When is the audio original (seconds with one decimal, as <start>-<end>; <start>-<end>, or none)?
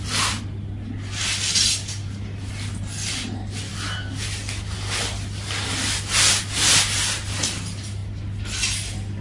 0.0-9.2